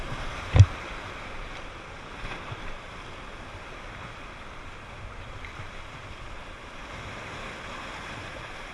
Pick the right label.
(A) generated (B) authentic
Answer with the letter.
B